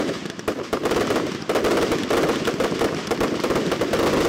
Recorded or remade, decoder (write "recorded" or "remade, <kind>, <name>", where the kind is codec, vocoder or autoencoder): recorded